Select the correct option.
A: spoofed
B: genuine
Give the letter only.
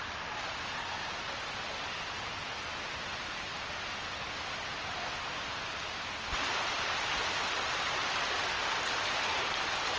B